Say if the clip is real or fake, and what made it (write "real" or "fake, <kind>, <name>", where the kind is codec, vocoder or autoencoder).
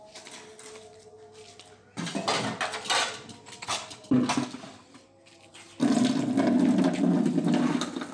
real